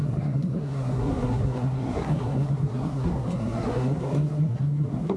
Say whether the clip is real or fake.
fake